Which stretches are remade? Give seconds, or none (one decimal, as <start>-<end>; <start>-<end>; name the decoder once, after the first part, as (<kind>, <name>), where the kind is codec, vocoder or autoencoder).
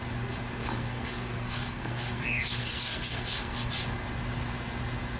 0.6-3.7 (codec, SNAC)